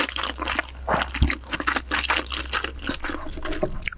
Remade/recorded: recorded